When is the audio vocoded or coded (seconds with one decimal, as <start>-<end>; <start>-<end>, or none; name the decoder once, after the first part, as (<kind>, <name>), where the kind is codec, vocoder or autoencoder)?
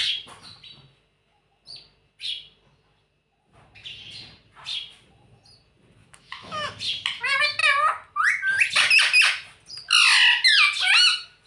6.0-6.7 (autoencoder, DAC-VAE)